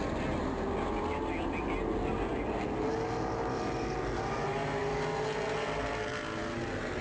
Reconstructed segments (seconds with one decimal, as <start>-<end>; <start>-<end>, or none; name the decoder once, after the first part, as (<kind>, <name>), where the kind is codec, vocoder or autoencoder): none